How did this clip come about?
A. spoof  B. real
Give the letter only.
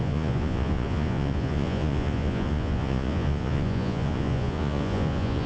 A